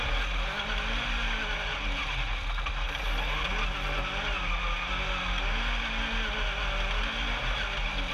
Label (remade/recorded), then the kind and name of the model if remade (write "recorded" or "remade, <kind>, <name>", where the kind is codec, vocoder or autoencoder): recorded